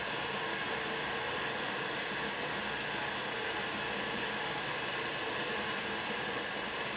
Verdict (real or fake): real